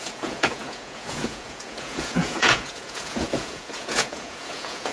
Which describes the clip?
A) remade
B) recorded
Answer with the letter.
A